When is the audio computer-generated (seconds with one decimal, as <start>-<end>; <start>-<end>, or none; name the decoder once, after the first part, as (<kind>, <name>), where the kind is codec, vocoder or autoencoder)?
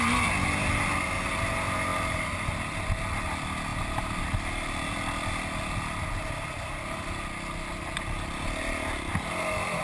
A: none